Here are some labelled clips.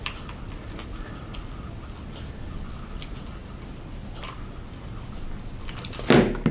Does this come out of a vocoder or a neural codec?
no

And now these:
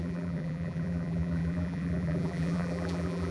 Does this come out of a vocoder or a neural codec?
yes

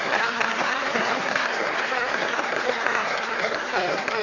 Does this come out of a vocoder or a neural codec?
yes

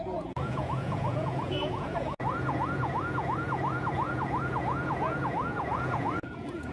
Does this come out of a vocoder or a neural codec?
yes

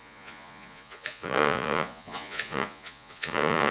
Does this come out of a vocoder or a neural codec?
yes